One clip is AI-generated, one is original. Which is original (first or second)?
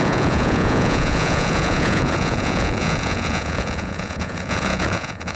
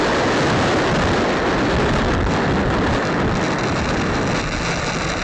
second